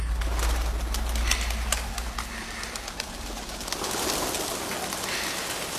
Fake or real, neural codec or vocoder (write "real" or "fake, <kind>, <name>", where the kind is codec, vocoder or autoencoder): real